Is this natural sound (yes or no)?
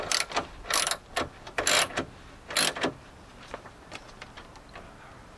yes